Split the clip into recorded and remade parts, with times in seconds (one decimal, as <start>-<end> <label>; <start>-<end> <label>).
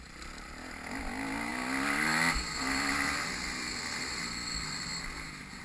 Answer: 0.0-5.6 recorded